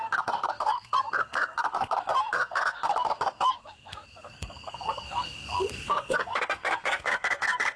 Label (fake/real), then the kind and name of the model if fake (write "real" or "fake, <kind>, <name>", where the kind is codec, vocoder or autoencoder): fake, codec, SNAC